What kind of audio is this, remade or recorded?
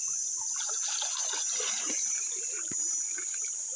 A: remade